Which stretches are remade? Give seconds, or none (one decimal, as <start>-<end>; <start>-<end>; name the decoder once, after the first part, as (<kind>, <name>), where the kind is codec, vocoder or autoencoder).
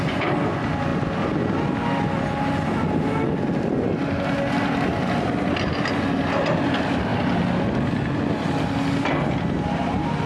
none